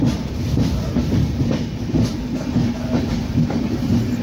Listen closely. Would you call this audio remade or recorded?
remade